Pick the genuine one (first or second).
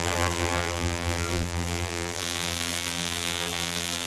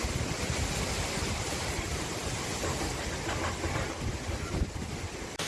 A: second